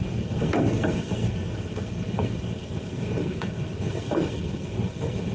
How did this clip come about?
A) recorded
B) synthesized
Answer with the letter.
B